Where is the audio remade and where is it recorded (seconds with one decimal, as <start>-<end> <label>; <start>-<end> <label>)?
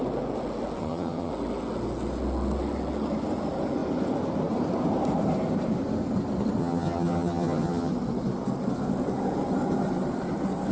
0.0-0.8 recorded; 0.8-1.3 remade; 1.3-6.6 recorded; 6.6-7.9 remade; 7.9-10.7 recorded